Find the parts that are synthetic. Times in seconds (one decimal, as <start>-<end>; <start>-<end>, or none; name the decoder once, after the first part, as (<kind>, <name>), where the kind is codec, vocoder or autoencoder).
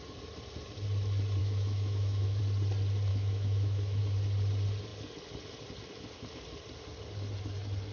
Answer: 1.4-2.4 (autoencoder, DAC-VAE); 3.1-4.0